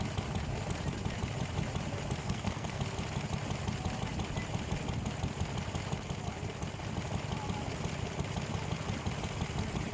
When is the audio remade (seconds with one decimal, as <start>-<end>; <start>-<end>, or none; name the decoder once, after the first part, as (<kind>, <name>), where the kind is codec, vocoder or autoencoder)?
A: 2.2-2.8 (codec, SNAC)